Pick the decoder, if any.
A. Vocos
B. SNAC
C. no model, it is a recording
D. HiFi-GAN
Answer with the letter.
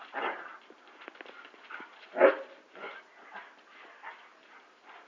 C